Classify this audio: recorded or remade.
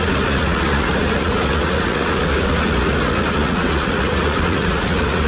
remade